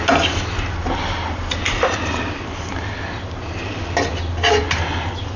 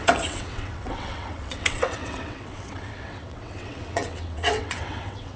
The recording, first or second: first